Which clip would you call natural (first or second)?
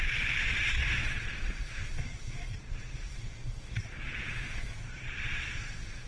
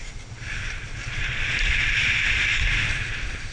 second